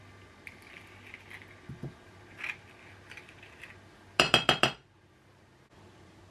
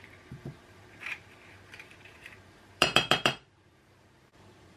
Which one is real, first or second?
first